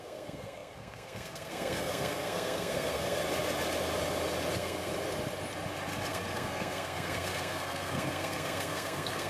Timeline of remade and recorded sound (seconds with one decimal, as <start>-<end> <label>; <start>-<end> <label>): 0.0-3.2 remade; 3.2-4.5 recorded; 4.5-4.9 remade; 4.9-6.1 recorded; 6.1-9.3 remade